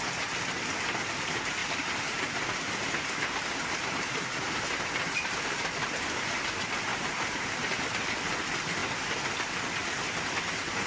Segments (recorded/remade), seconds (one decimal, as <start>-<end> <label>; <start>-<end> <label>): 0.0-1.6 recorded; 1.6-5.3 remade; 5.3-6.9 recorded; 6.9-7.9 remade; 7.9-10.9 recorded